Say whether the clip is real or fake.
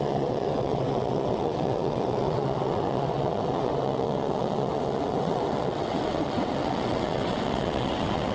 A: fake